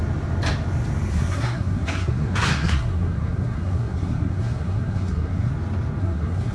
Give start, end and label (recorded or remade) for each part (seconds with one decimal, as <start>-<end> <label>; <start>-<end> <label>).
0.0-1.1 recorded; 1.1-5.5 remade; 5.5-6.0 recorded; 6.0-6.5 remade